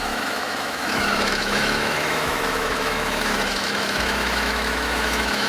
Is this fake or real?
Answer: fake